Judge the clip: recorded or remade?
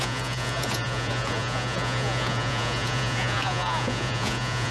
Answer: remade